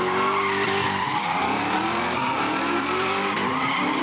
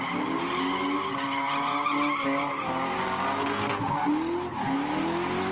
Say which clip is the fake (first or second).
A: first